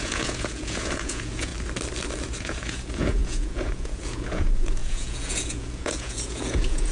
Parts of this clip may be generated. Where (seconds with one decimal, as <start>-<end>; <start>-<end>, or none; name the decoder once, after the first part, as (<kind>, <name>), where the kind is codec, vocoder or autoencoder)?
0.0-1.5 (vocoder, Vocos); 2.4-6.9